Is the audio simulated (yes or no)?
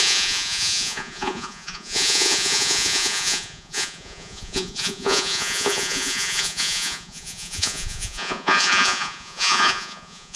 yes